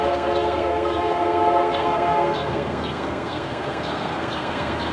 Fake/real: fake